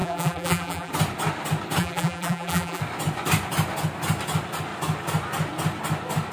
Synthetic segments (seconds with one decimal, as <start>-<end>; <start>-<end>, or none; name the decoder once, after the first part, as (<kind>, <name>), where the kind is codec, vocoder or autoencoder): 0.0-0.9 (vocoder, BigVGAN v2); 1.8-2.8